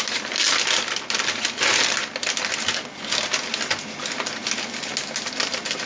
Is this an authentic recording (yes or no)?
yes